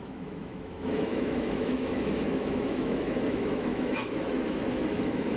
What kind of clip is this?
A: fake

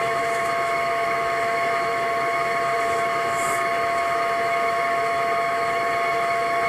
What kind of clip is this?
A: fake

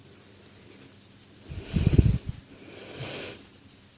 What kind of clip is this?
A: real